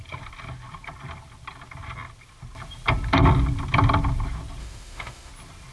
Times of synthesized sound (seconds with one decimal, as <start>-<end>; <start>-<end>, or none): 4.6-5.3